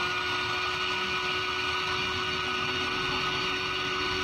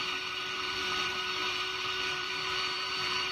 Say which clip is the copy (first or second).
second